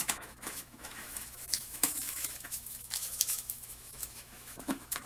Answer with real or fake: fake